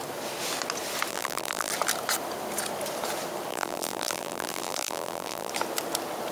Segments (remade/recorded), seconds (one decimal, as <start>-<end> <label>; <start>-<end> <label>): 0.0-1.1 recorded; 1.1-1.7 remade; 1.7-3.5 recorded; 3.5-5.5 remade; 5.5-6.3 recorded